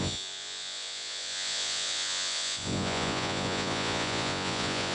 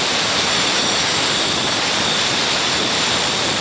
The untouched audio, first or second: second